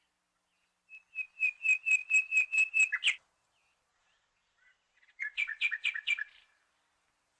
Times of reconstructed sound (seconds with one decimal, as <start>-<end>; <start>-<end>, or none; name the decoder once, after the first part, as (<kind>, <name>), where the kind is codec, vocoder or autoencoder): 3.9-6.3 (vocoder, Vocos)